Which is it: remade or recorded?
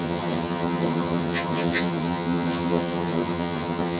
remade